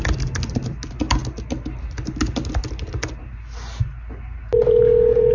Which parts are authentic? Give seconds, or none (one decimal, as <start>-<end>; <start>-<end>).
0.0-5.3

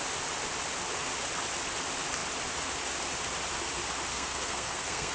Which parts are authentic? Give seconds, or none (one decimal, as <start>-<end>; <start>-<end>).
0.0-4.1

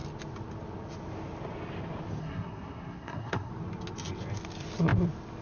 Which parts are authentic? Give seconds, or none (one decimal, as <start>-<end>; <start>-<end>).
0.0-2.2; 3.5-5.4

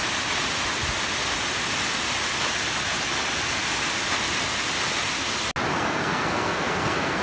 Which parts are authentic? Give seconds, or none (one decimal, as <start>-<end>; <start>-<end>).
0.0-5.7

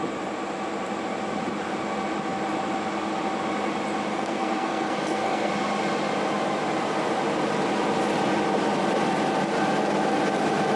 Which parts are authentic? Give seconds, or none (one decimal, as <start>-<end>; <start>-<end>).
0.0-4.1; 5.5-10.8